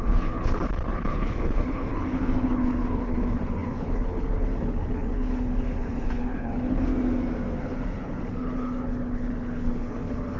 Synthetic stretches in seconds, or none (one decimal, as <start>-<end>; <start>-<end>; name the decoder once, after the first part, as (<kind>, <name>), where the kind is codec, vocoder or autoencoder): 0.0-6.9 (codec, HILCodec); 7.6-10.4